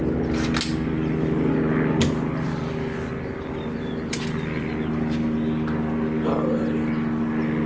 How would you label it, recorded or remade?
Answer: recorded